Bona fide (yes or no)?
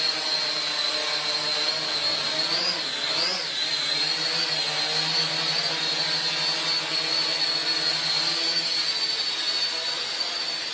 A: yes